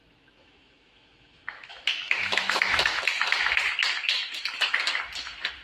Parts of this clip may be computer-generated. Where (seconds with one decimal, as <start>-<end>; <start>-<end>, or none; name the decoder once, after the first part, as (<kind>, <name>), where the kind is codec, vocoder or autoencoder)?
0.0-3.0 (autoencoder, DAC-VAE)